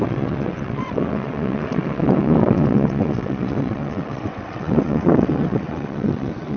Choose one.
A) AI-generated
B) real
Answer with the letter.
A